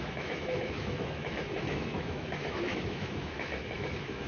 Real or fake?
fake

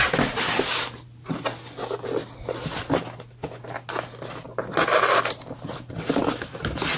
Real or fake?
real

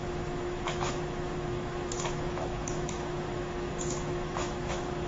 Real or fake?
fake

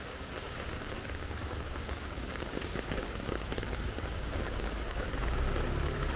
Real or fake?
fake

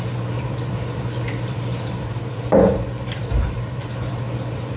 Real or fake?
fake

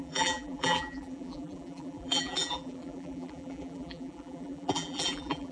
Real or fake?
fake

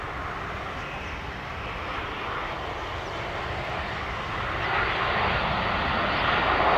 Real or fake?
real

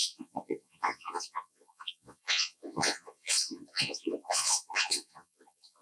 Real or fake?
fake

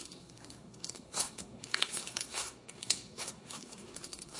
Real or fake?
fake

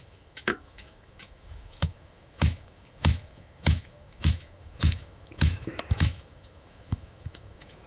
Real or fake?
fake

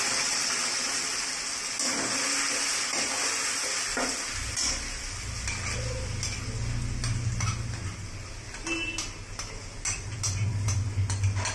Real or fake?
real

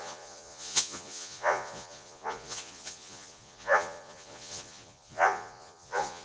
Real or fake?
fake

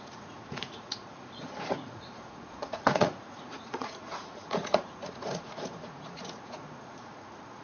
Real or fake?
fake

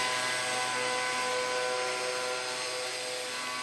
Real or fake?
real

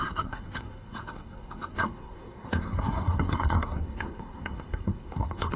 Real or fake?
fake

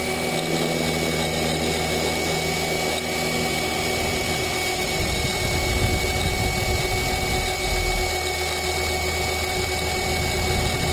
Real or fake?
real